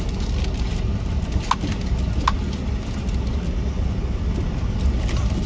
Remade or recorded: recorded